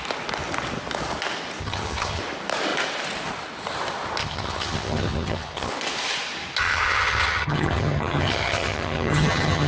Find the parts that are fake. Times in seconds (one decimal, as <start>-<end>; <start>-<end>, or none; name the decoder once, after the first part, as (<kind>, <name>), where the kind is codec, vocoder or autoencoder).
1.6-2.2 (vocoder, HiFi-GAN); 4.2-5.7; 6.6-9.7